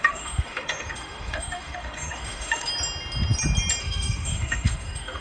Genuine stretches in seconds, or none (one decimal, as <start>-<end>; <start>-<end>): 2.7-3.8